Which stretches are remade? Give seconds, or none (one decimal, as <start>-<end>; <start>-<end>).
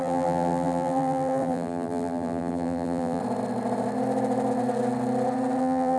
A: 0.0-3.2; 5.6-6.0